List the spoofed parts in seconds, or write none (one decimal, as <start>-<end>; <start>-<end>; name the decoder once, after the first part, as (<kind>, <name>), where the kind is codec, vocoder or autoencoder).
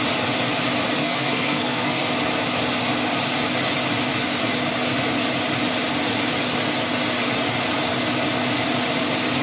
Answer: 1.0-2.1 (codec, SNAC)